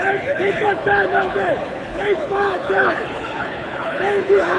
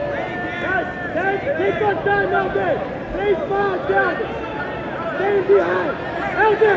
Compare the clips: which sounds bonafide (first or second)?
second